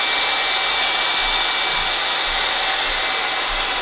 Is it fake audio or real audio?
real